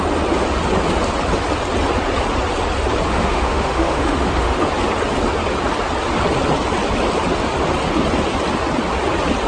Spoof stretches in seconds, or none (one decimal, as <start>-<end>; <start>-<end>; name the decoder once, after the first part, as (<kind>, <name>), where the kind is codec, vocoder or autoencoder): 3.1-4.7 (autoencoder, DAC-VAE)

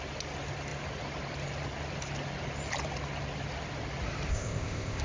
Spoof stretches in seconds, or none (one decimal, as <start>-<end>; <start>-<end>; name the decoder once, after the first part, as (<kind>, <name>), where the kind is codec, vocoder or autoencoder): 4.3-5.0 (codec, ZipCodec)